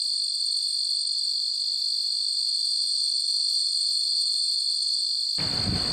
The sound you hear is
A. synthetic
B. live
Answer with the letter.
B